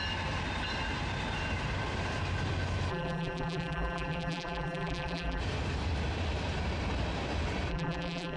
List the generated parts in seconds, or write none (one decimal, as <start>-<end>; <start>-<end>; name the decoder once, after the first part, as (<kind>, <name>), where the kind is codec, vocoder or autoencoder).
2.9-5.4 (vocoder, BigVGAN v2); 7.7-8.4